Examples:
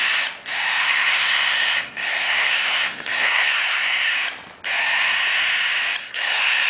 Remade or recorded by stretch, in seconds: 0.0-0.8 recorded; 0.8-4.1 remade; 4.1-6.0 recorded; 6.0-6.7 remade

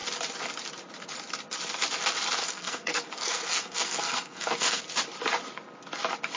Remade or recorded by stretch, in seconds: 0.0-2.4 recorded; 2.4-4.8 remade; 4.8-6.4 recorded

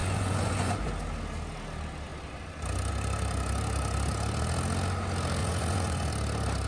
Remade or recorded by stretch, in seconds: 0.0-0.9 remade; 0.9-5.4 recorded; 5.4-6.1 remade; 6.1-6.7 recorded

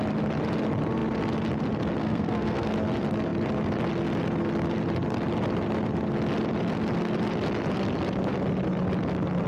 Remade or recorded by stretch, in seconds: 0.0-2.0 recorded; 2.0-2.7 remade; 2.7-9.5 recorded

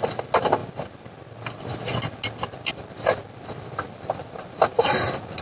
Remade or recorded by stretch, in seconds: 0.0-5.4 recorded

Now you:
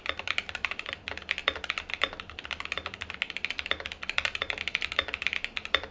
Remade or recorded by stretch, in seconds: 0.0-5.9 recorded

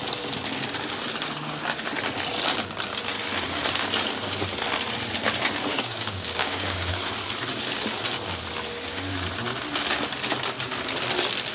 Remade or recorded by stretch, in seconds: 0.0-5.7 recorded; 5.7-6.9 remade; 6.9-11.5 recorded